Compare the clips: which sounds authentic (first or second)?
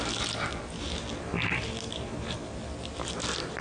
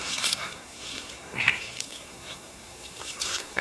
first